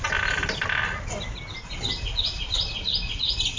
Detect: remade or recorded recorded